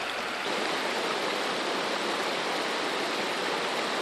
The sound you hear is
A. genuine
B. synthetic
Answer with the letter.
A